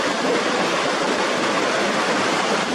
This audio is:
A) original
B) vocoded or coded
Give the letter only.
A